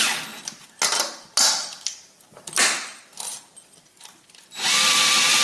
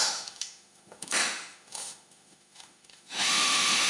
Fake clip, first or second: second